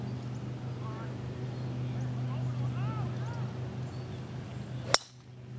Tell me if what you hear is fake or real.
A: real